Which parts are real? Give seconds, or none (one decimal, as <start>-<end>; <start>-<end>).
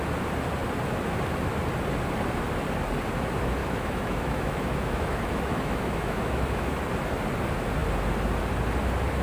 0.0-3.6; 6.8-9.2